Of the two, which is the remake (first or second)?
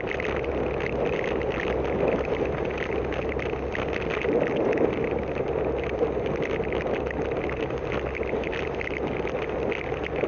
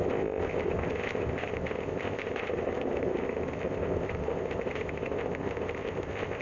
second